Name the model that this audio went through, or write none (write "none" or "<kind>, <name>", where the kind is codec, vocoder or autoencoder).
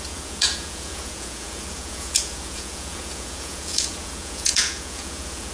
vocoder, Vocos